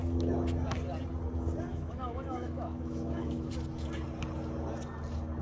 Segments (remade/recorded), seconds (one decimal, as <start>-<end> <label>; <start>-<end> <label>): 0.0-1.7 recorded; 1.7-3.5 remade; 3.5-5.4 recorded